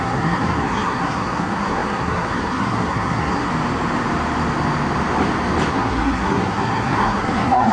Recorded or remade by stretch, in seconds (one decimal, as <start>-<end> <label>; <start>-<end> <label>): 0.0-3.5 remade; 3.5-5.7 recorded; 5.7-7.7 remade